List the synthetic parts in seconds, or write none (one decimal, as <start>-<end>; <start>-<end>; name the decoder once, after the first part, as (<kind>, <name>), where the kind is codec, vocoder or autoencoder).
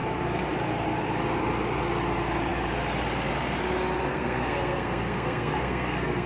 4.1-6.3 (codec, SNAC)